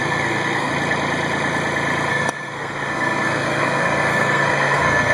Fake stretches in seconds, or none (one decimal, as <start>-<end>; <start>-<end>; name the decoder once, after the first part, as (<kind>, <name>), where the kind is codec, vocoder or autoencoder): 0.0-0.7 (codec, SNAC); 2.1-5.1